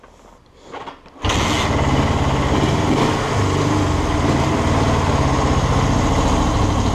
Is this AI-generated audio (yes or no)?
no